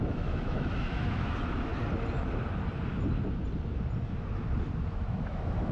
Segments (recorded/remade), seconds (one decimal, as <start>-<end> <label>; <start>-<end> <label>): 0.0-1.7 remade; 1.7-4.9 recorded; 4.9-5.7 remade